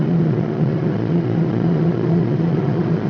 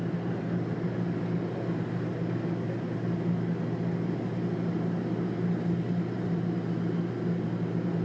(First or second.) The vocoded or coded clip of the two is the first